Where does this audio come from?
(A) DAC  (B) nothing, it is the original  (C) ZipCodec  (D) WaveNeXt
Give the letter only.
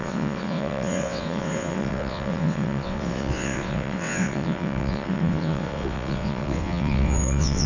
D